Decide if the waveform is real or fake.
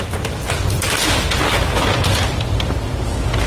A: real